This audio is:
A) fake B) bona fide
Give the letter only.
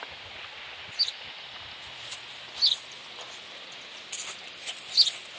B